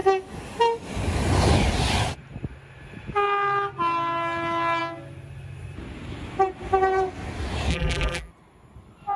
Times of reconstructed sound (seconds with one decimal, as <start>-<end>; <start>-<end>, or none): 7.7-8.3